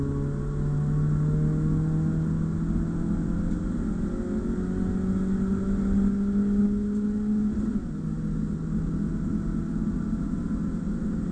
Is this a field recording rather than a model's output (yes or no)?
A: yes